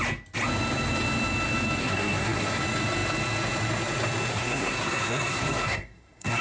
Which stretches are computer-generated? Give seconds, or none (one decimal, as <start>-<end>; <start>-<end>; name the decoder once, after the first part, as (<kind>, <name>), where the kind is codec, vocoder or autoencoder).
1.8-2.6 (codec, SNAC); 4.3-6.4